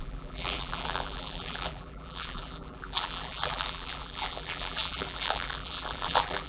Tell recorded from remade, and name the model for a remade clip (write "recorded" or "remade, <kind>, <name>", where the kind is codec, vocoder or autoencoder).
remade, vocoder, BigVGAN v2